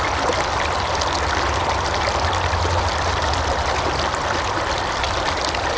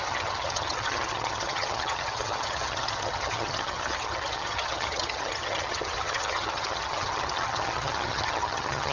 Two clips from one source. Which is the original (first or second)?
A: first